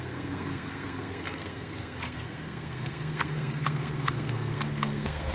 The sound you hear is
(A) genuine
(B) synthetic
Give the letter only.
B